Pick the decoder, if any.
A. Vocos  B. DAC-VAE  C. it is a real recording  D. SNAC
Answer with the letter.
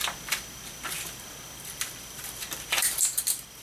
C